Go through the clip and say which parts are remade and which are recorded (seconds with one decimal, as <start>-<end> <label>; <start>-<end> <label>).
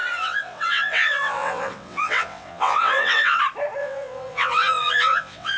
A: 0.0-3.4 remade; 3.4-3.8 recorded; 3.8-5.6 remade